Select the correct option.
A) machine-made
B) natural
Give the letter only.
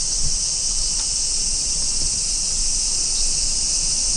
B